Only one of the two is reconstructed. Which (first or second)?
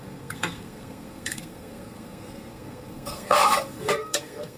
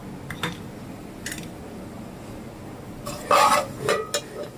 first